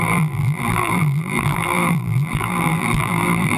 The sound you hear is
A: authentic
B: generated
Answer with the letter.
B